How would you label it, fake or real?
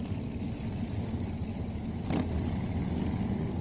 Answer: real